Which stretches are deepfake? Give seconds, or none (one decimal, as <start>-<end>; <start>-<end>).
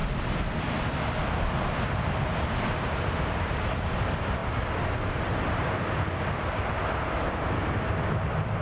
none